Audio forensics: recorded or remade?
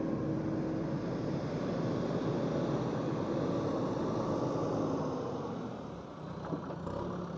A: recorded